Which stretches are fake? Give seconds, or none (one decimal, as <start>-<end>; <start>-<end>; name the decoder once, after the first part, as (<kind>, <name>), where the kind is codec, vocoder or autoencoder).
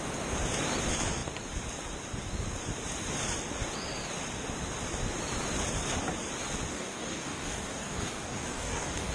6.7-9.1 (codec, DAC)